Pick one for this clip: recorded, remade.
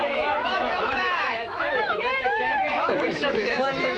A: remade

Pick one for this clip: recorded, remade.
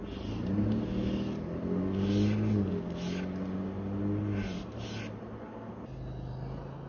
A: recorded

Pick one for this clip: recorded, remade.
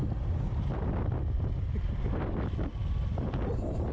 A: recorded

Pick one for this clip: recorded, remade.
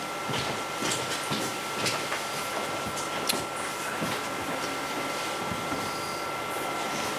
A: recorded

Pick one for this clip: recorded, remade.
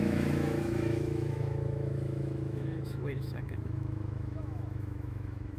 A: remade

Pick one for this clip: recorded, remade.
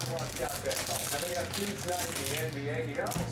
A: recorded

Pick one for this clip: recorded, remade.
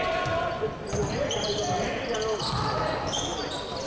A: recorded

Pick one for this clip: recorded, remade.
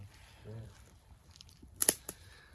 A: remade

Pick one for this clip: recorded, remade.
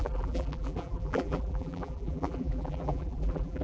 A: remade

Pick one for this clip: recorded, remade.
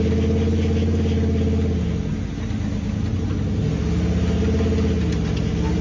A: recorded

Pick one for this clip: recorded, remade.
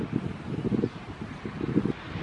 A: recorded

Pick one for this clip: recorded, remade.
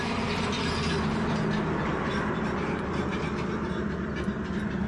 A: recorded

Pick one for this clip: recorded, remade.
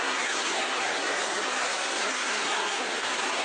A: remade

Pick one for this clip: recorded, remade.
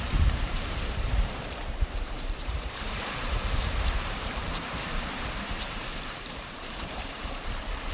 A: remade